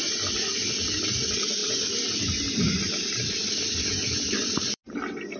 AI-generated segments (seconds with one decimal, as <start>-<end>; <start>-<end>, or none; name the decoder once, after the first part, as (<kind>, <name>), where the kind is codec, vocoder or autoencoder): 1.6-4.8 (vocoder, BigVGAN v2)